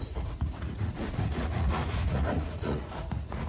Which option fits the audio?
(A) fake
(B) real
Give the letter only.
A